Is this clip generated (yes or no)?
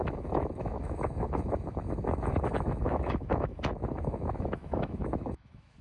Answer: yes